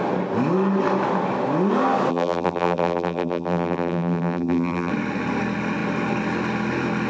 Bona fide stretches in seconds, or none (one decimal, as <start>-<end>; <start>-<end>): 0.0-2.1; 4.9-7.1